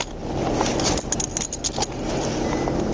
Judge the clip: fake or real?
real